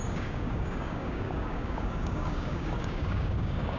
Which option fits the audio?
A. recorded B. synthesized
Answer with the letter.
B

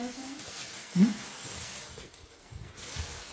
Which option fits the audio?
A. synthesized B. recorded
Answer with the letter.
A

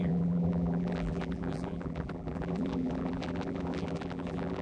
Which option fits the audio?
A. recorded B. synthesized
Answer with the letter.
B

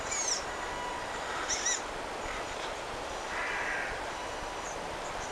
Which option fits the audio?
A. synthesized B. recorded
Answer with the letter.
B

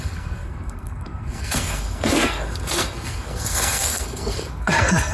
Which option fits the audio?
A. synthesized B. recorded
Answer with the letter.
A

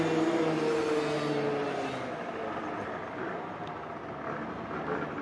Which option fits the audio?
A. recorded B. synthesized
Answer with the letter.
A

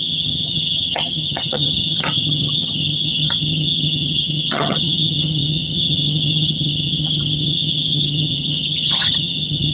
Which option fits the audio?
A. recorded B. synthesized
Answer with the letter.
B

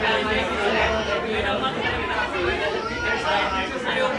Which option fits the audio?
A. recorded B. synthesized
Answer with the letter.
A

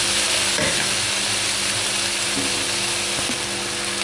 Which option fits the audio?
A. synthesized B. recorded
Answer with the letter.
B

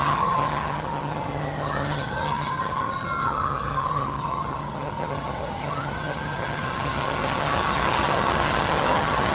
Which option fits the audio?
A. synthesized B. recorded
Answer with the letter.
A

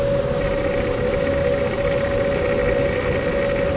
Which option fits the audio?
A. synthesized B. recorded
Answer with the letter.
B